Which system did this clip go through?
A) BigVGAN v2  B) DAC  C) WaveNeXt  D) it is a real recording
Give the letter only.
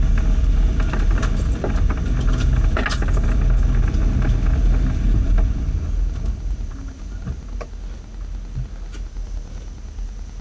D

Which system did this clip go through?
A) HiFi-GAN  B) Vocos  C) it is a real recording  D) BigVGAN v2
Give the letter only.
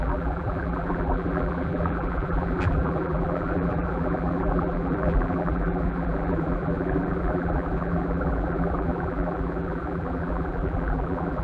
D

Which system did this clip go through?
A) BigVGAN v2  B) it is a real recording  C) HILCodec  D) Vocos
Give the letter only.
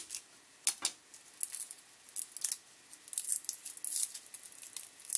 B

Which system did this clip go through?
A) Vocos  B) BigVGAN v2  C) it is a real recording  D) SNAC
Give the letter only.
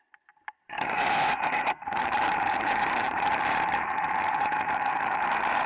B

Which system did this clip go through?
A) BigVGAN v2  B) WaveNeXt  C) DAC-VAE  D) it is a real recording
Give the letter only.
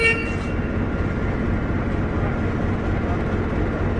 D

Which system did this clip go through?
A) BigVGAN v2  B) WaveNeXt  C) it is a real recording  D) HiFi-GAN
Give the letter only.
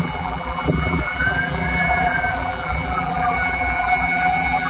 A